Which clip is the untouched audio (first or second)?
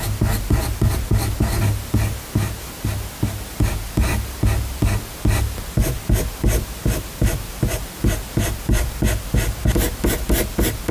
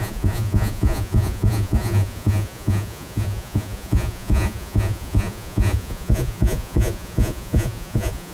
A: first